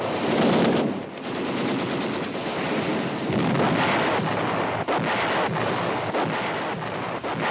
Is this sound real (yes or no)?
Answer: yes